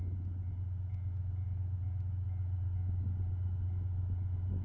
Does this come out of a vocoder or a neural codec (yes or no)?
no